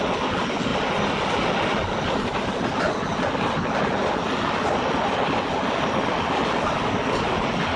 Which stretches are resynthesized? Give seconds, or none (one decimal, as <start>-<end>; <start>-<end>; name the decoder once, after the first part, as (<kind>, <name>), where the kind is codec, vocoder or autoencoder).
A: none